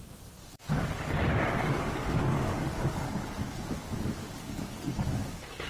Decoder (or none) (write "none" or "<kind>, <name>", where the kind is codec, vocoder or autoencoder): codec, DAC